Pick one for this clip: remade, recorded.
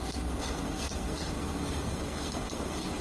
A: remade